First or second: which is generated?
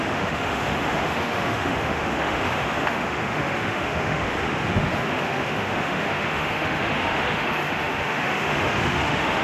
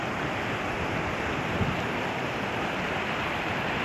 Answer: first